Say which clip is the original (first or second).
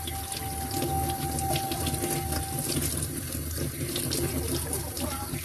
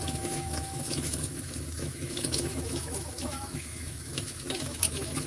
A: first